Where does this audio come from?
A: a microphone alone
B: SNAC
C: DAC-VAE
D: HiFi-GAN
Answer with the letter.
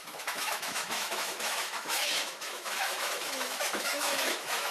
C